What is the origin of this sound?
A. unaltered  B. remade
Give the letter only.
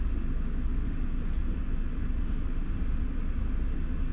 A